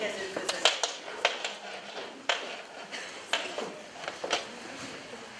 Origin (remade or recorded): recorded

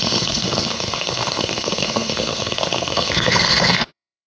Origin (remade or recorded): remade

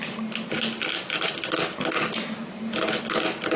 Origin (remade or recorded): recorded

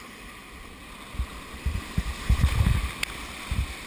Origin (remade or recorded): recorded